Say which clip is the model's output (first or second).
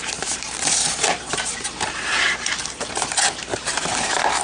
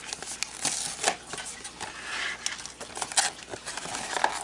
first